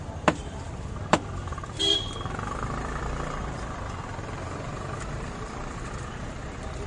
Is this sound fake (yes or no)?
yes